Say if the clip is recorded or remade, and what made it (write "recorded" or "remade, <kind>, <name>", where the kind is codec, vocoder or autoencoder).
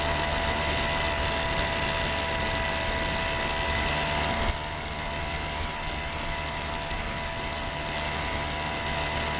recorded